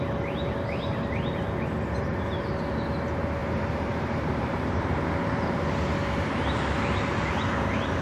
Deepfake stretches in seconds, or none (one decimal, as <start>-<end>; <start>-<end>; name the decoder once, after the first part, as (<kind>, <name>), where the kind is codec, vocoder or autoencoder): 3.4-5.0 (vocoder, BigVGAN v2)